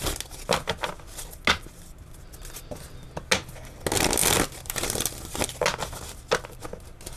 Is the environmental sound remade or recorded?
recorded